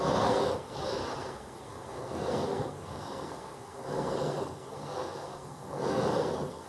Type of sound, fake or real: fake